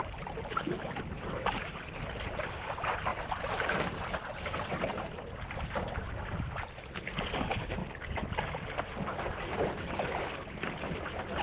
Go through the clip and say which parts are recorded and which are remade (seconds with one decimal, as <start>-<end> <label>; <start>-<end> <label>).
0.0-3.1 recorded; 3.1-3.6 remade; 3.6-11.4 recorded